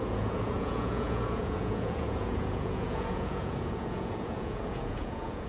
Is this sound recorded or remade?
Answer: remade